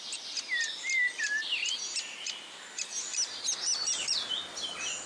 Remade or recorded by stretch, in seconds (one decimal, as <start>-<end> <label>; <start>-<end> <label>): 0.0-3.1 recorded; 3.1-4.1 remade; 4.1-5.1 recorded